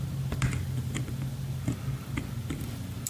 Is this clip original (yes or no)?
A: yes